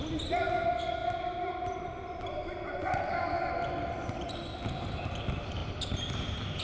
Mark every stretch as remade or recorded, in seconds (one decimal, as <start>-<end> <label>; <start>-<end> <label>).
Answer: 0.0-6.6 recorded